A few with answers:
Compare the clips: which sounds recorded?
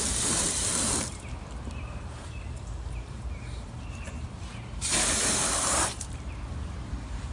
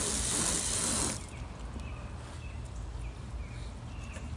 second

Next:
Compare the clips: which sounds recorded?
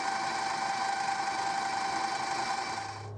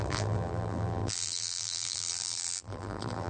first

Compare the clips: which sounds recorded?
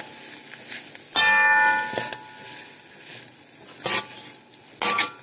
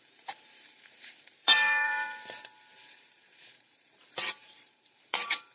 first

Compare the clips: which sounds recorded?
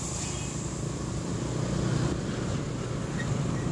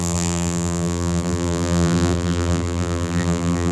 first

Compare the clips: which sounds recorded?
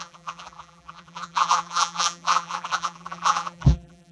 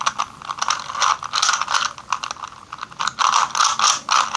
second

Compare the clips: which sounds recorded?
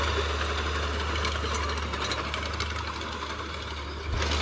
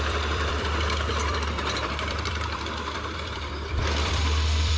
first